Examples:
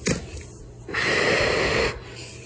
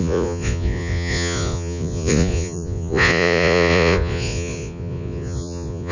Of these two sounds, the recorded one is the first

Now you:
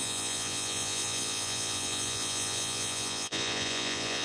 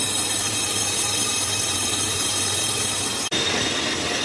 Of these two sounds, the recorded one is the second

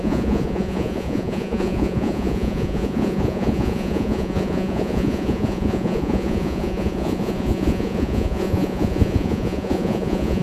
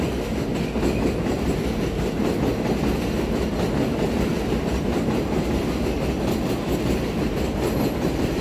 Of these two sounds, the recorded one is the second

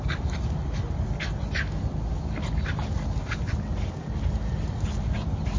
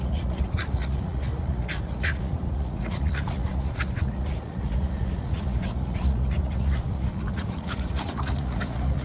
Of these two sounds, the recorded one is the first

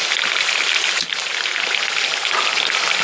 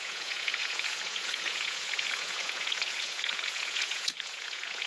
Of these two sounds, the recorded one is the first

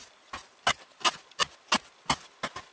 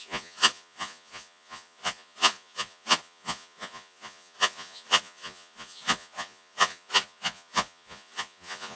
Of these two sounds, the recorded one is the first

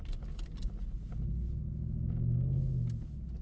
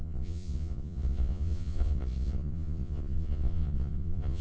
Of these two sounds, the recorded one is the first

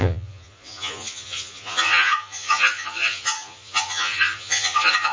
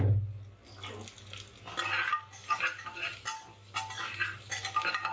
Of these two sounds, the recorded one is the second